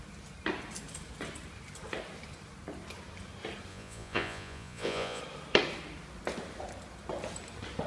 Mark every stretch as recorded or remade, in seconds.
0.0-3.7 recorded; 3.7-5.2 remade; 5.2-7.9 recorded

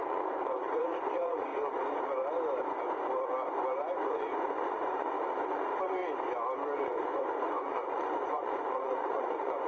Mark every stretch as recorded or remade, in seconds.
0.0-1.5 remade; 1.5-4.1 recorded; 4.1-6.0 remade; 6.0-6.8 recorded; 6.8-9.7 remade

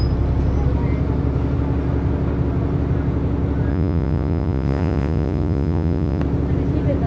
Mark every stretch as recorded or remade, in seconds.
0.0-3.7 recorded; 3.7-6.2 remade; 6.2-7.1 recorded

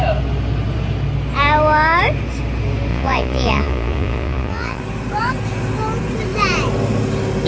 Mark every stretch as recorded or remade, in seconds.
0.0-2.9 recorded; 2.9-4.8 remade; 4.8-7.5 recorded

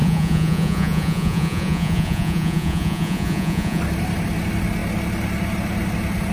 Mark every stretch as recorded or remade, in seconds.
0.0-3.8 remade; 3.8-6.3 recorded

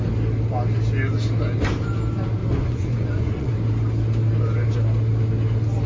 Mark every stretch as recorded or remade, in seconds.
0.0-2.4 recorded; 2.4-3.5 remade; 3.5-5.9 recorded